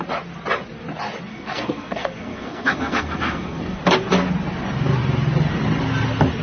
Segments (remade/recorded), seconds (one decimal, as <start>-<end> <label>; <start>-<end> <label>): 0.0-1.3 recorded; 1.3-3.8 remade; 3.8-6.4 recorded